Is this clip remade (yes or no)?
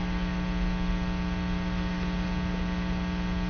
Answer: no